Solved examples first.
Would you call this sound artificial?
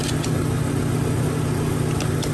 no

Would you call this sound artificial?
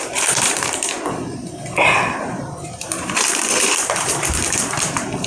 yes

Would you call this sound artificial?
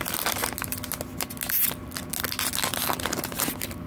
no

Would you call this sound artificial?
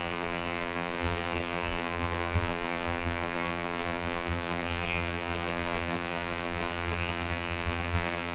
yes